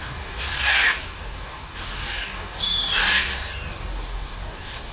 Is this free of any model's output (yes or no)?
no